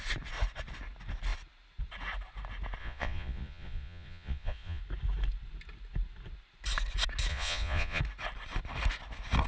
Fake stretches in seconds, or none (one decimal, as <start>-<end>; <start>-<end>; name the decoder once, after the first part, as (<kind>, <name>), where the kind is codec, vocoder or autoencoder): 2.8-4.8 (vocoder, Vocos); 7.3-8.0